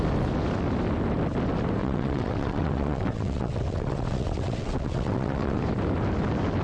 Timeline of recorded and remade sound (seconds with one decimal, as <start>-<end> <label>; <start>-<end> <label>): 0.0-1.8 recorded; 1.8-5.6 remade; 5.6-6.6 recorded